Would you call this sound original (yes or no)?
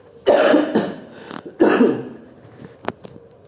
yes